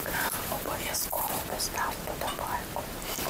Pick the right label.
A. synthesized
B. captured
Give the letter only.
A